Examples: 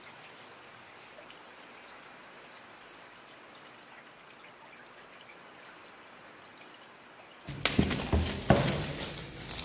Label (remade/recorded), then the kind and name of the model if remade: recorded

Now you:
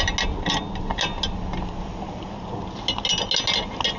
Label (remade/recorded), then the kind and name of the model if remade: recorded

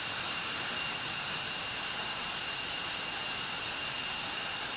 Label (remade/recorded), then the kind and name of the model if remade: recorded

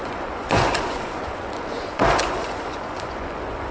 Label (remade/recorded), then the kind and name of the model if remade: remade, vocoder, Vocos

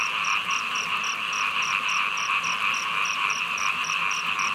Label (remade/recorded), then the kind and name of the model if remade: recorded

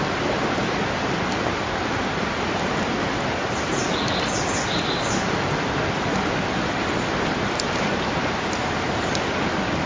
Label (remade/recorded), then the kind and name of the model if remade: recorded